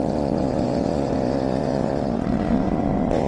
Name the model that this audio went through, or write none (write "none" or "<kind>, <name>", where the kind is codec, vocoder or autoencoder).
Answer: vocoder, Vocos